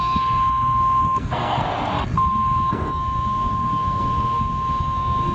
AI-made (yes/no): yes